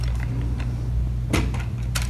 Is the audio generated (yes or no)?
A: no